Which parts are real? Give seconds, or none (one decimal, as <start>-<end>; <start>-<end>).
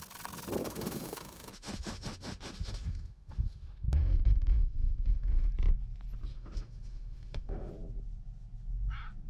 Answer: 0.0-0.6; 5.5-6.3; 7.7-9.3